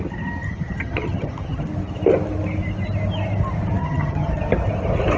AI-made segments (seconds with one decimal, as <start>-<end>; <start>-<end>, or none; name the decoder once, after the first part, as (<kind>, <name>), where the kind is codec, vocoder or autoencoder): 0.4-1.6 (vocoder, HiFi-GAN); 3.8-4.3